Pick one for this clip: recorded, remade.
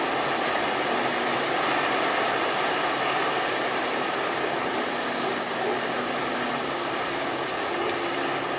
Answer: recorded